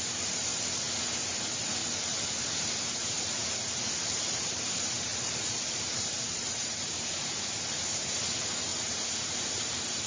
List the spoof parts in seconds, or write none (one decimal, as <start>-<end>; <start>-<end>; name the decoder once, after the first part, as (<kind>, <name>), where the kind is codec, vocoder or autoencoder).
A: 0.0-0.5 (vocoder, BigVGAN v2); 1.4-10.1